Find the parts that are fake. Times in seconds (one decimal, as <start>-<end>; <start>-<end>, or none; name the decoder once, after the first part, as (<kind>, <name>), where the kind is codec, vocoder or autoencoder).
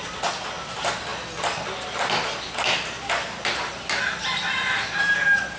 none